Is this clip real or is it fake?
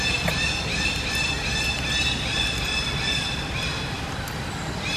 real